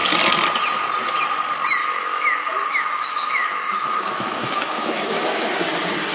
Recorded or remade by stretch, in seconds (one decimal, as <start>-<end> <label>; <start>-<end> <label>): 0.0-1.8 recorded; 1.8-5.5 remade; 5.5-6.1 recorded